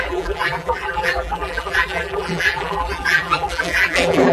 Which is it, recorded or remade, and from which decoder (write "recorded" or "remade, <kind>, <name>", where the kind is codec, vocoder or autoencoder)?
remade, vocoder, BigVGAN v2